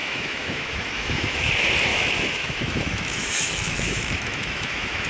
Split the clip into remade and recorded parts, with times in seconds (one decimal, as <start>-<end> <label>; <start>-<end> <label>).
0.0-1.5 remade; 1.5-1.9 recorded; 1.9-5.1 remade